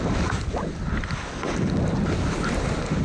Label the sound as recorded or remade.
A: recorded